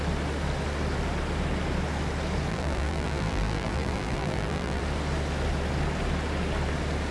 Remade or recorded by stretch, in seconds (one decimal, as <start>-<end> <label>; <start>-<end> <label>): 0.0-2.5 recorded; 2.5-4.8 remade; 4.8-7.1 recorded